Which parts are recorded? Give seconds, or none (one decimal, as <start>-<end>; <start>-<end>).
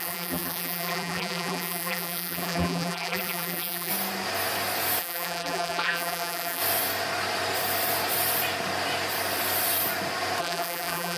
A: 3.9-5.0; 6.6-10.4